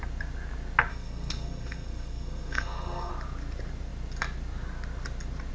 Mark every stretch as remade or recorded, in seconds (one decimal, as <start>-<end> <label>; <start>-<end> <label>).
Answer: 0.0-0.9 recorded; 0.9-3.1 remade; 3.1-5.5 recorded